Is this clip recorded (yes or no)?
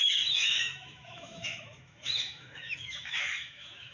no